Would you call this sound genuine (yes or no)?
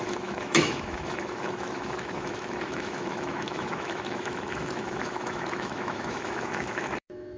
no